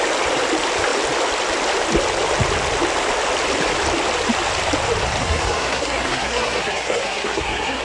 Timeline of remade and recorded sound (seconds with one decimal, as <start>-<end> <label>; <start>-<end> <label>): 0.0-5.2 recorded; 5.2-7.8 remade